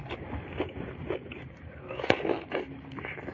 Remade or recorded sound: recorded